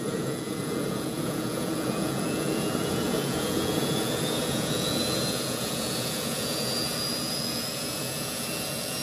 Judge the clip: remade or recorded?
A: remade